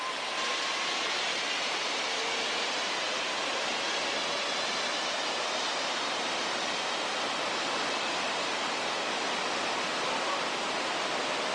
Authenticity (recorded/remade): remade